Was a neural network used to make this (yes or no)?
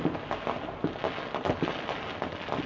no